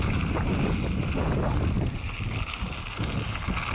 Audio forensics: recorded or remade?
recorded